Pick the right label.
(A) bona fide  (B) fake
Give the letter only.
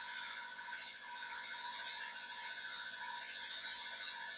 B